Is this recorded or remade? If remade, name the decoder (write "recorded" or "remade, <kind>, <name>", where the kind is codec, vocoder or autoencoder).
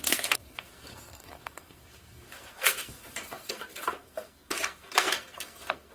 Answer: remade, codec, SNAC